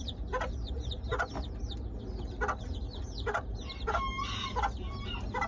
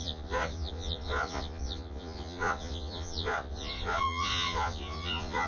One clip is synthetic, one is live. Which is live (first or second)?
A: first